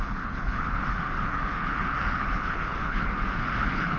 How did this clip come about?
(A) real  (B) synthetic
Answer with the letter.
B